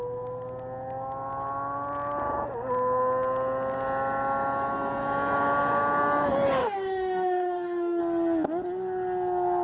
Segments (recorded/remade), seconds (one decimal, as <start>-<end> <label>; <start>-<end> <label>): 0.0-6.6 recorded; 6.6-8.0 remade; 8.0-9.6 recorded